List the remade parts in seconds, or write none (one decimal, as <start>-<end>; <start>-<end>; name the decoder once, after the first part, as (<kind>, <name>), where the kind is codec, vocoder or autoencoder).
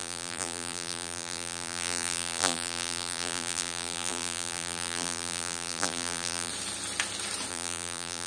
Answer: 0.0-6.5 (vocoder, BigVGAN v2); 7.5-8.3